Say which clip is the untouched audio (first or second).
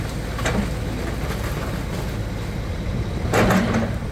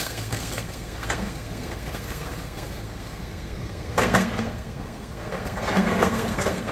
first